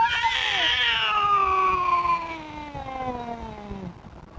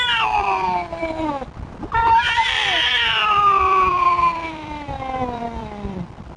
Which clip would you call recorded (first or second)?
first